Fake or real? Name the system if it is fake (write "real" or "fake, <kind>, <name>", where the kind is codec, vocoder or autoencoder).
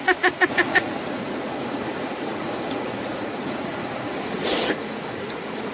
fake, vocoder, Vocos